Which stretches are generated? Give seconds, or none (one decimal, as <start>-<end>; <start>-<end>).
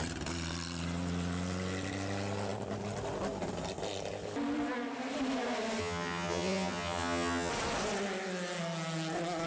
5.8-7.5